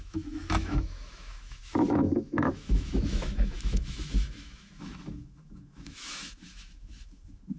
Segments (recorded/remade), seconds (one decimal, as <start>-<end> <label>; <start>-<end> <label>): 0.0-7.6 remade